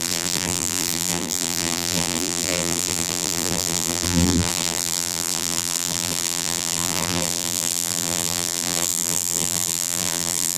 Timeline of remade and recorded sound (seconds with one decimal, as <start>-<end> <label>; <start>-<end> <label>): 0.0-10.6 remade